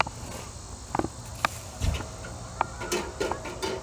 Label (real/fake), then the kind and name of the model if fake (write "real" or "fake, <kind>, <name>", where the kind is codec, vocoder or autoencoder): real